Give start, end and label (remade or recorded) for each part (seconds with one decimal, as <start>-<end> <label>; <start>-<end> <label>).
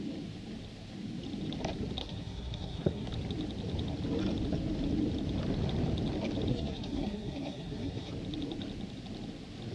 0.0-2.0 recorded; 2.0-3.1 remade; 3.1-6.5 recorded; 6.5-8.1 remade; 8.1-9.7 recorded